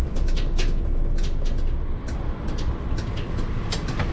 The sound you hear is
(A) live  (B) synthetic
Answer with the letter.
A